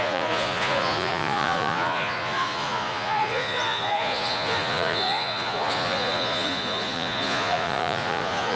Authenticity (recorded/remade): remade